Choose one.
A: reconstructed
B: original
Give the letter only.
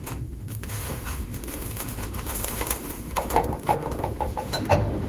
A